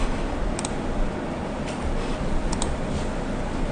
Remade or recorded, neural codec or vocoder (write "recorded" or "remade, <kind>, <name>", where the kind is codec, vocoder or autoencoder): recorded